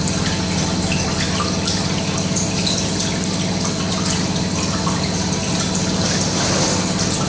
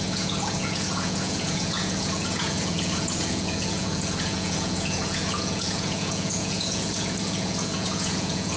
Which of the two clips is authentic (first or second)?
first